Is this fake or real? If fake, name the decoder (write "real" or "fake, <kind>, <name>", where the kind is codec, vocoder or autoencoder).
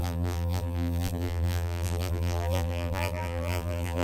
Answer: fake, vocoder, BigVGAN v2